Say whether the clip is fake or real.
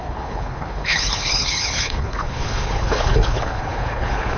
fake